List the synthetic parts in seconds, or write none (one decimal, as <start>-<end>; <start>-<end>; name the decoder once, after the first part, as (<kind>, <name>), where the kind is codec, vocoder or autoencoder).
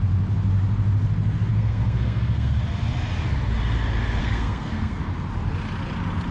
1.5-2.6 (codec, SNAC); 4.2-5.0